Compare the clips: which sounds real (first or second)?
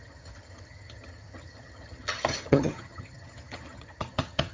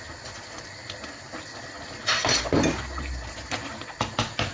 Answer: second